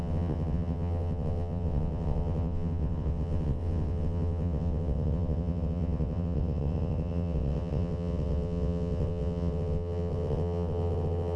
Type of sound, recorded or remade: remade